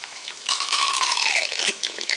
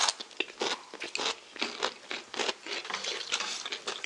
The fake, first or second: first